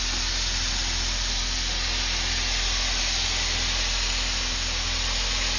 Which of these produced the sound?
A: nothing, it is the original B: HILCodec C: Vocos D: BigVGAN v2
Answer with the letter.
A